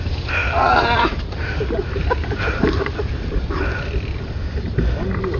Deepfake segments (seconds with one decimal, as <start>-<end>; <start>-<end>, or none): 0.4-3.6